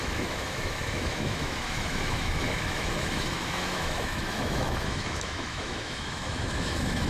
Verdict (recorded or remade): remade